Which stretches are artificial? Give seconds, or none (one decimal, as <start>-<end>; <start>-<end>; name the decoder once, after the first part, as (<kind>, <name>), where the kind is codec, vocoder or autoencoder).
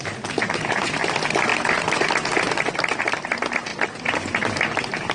none